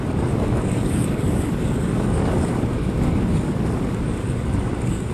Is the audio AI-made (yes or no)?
yes